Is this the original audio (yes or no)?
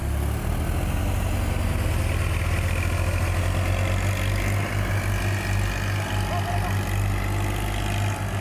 yes